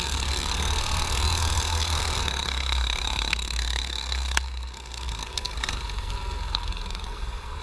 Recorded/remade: remade